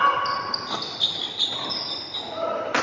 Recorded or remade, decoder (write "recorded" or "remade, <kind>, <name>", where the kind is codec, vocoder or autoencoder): recorded